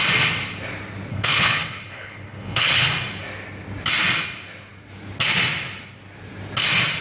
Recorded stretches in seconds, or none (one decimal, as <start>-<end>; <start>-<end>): 0.0-1.1; 2.9-7.0